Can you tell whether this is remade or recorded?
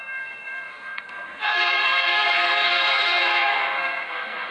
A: remade